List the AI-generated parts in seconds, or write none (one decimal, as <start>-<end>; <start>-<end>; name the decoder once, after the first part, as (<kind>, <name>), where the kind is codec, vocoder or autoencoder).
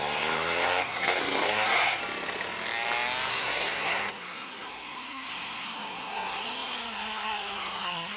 0.0-2.0 (codec, SNAC); 3.3-8.2